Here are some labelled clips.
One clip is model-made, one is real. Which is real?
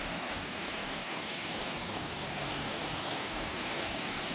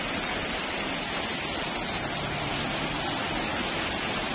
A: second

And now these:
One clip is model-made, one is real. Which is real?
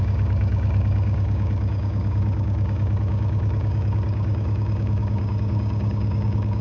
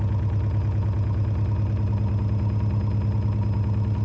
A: second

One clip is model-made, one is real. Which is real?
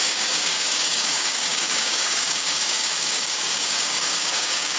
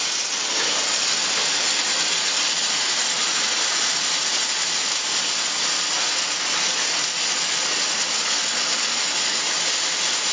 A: second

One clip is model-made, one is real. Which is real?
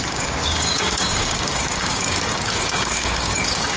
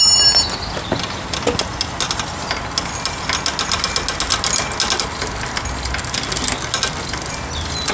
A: second